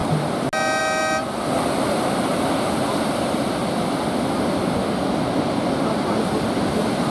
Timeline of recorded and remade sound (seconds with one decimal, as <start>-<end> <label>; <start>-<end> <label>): 0.0-7.1 recorded